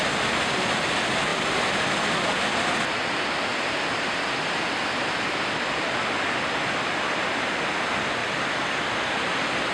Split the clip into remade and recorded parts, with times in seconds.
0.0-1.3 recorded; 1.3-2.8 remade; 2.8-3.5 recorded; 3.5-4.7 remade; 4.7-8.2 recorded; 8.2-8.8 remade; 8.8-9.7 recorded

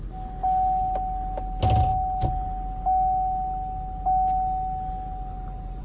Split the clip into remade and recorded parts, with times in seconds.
0.0-5.8 recorded

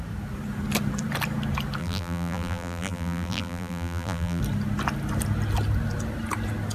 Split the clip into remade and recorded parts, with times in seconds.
0.0-1.8 recorded; 1.8-4.4 remade; 4.4-6.7 recorded

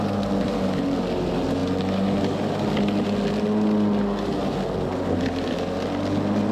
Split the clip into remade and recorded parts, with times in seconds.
0.0-6.5 recorded

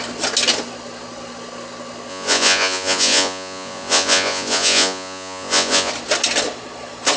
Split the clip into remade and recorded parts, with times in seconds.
0.0-2.1 recorded; 2.1-5.9 remade; 5.9-7.2 recorded

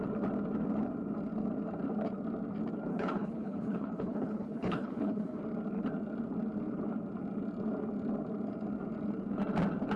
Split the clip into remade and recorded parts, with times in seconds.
0.0-2.9 recorded; 2.9-5.4 remade; 5.4-10.0 recorded